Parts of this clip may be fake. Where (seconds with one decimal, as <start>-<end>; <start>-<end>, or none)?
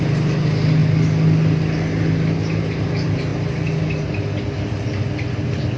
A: none